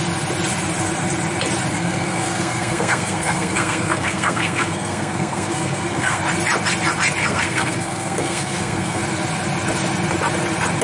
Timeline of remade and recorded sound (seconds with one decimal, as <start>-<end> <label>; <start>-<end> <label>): 0.0-1.7 recorded; 1.7-6.2 remade; 6.2-7.2 recorded; 7.2-9.0 remade; 9.0-10.8 recorded